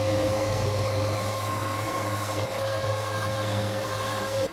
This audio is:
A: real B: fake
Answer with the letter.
B